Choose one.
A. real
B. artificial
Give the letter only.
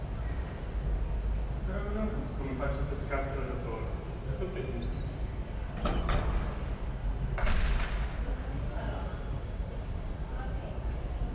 A